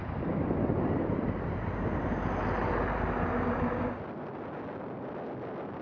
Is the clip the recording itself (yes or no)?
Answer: yes